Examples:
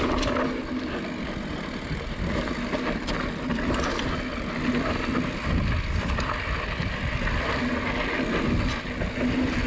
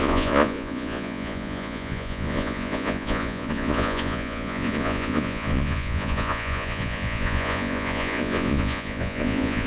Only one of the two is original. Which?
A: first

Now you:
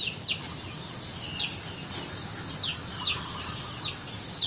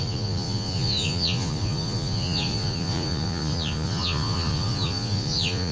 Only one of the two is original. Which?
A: first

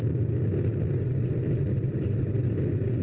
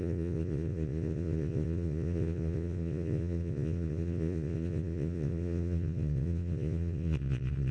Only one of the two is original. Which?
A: first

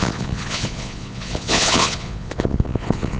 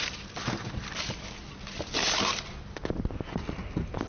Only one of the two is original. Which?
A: second